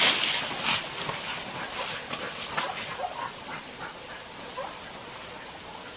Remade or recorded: recorded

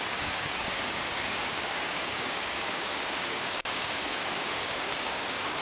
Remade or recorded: remade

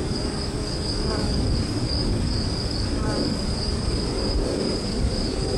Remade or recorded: remade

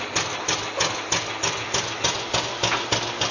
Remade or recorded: recorded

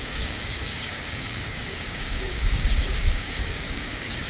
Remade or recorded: remade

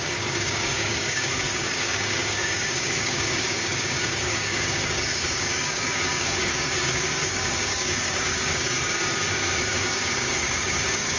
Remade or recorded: remade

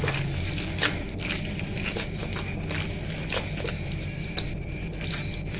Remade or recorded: recorded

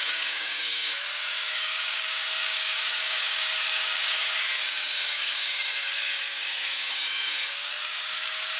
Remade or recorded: remade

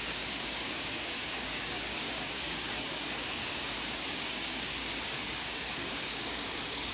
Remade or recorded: remade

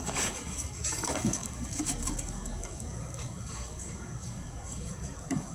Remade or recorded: remade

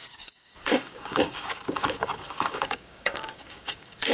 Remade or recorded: remade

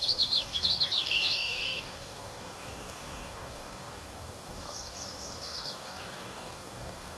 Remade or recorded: remade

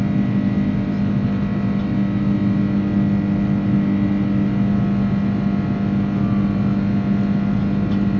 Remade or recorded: recorded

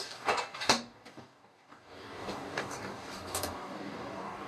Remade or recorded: remade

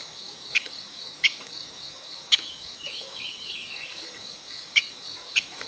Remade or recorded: remade